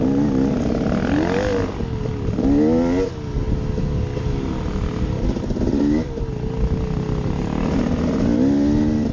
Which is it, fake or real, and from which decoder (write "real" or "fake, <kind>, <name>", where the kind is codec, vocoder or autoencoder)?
real